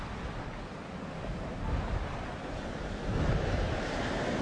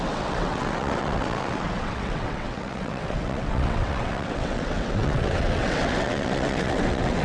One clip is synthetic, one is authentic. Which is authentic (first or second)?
first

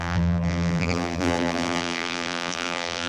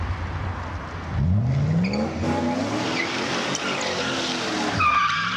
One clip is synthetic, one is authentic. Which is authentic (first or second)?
second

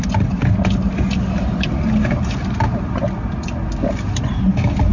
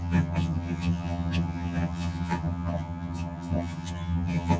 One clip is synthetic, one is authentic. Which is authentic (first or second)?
first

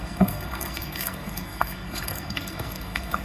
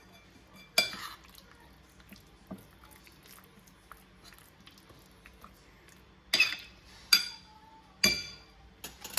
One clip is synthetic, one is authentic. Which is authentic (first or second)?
second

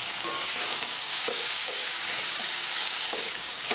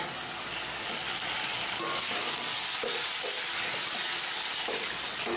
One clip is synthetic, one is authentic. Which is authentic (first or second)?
second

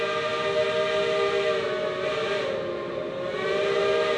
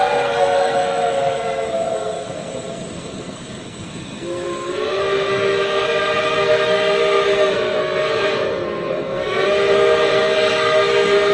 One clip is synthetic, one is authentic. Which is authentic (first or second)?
first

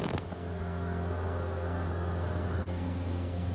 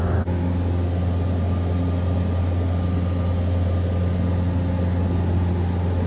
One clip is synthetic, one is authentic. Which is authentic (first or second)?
second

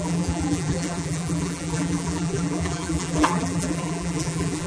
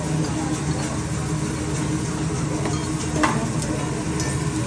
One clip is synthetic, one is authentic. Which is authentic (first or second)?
second